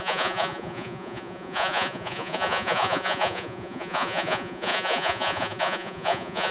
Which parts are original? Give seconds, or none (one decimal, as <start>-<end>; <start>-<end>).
none